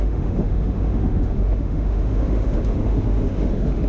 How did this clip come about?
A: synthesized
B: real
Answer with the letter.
A